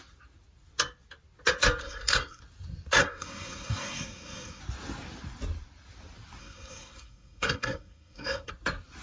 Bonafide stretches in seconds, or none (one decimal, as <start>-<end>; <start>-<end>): 0.0-1.8; 2.4-3.0; 4.6-6.4; 8.5-9.0